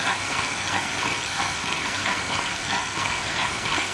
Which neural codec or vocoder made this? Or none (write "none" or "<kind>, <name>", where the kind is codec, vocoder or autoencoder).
codec, SNAC